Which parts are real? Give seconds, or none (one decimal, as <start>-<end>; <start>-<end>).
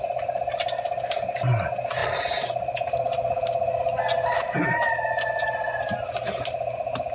0.0-7.1